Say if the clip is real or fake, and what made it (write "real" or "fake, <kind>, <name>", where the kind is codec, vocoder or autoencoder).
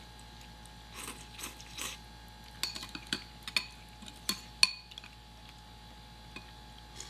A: real